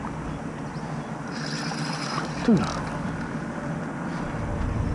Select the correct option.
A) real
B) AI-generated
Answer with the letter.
A